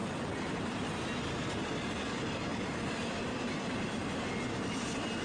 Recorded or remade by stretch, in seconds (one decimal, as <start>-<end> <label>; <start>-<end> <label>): 0.0-5.2 recorded